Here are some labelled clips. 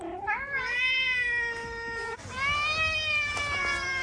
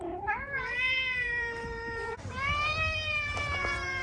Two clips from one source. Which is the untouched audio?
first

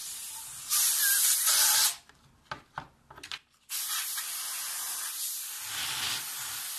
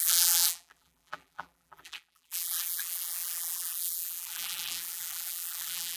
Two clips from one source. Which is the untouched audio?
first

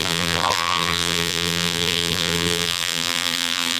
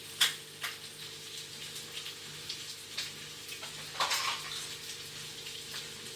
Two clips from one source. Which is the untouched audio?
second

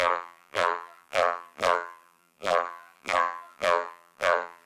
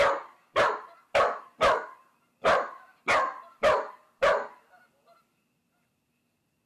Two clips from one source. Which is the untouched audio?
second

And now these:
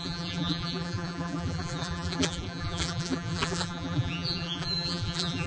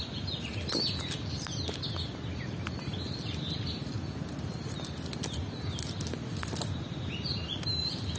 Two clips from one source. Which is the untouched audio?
second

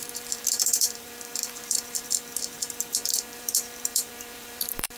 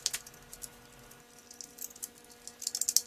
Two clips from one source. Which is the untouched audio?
second